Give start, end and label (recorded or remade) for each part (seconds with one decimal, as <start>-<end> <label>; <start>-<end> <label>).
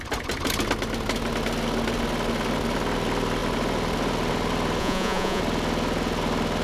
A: 0.0-4.8 recorded; 4.8-5.4 remade; 5.4-6.6 recorded